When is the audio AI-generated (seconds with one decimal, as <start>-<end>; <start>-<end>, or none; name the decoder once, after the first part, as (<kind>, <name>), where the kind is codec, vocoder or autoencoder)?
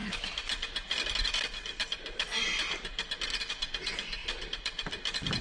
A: 0.0-3.2 (vocoder, BigVGAN v2); 4.2-5.4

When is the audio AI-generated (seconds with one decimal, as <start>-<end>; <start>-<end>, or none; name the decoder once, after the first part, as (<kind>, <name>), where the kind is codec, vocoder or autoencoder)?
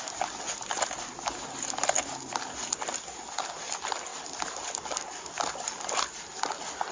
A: none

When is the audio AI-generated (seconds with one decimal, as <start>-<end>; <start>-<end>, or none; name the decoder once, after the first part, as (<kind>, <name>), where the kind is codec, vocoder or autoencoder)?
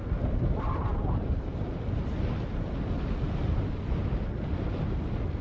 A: none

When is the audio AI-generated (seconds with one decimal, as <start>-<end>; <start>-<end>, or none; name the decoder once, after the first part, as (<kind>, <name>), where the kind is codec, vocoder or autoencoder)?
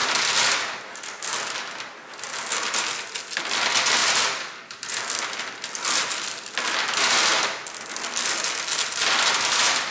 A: none